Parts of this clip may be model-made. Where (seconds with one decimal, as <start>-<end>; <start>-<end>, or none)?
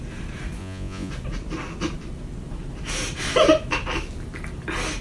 0.6-1.1